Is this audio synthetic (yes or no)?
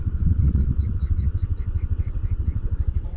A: yes